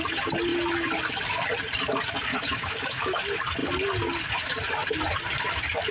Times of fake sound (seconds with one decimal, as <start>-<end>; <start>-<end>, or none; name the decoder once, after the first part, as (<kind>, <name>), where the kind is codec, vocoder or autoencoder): 2.3-3.2 (autoencoder, DAC-VAE)